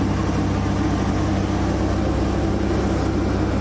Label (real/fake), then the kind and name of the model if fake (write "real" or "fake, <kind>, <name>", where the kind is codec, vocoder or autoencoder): real